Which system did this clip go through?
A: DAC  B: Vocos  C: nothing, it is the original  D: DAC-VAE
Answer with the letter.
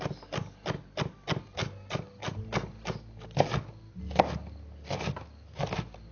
C